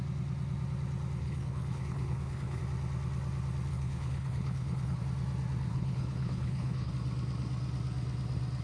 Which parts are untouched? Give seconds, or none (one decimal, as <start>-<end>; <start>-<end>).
0.0-1.2; 2.6-3.7; 5.0-5.7; 6.9-8.6